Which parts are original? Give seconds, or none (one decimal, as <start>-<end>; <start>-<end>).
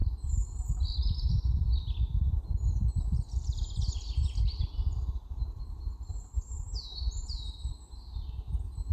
0.0-4.9; 7.7-8.9